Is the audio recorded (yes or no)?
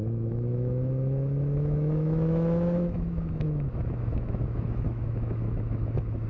no